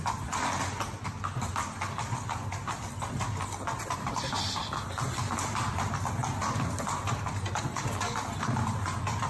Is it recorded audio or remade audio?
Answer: recorded